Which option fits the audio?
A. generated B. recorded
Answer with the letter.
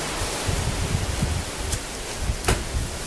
B